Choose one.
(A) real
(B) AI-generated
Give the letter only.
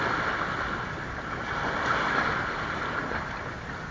A